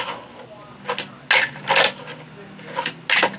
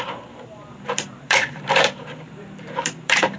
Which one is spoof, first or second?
second